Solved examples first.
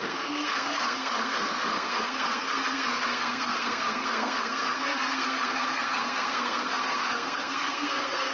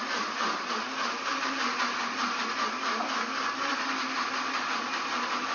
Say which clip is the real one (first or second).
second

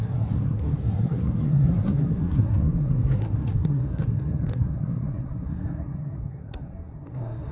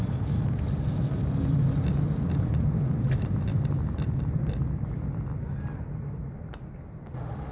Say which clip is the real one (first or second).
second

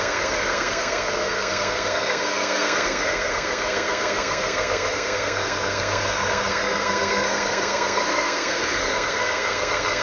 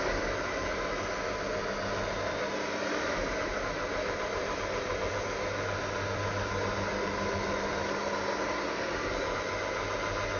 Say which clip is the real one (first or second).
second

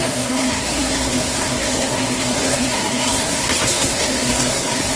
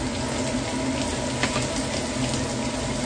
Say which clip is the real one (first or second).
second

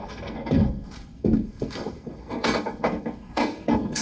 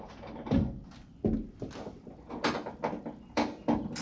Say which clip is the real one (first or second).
second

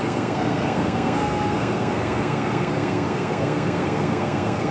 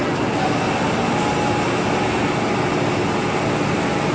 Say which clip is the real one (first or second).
second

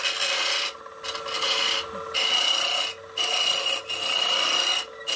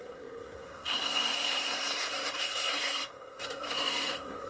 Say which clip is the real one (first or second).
first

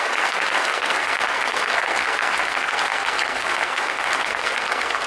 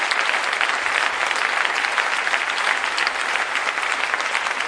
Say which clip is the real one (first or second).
second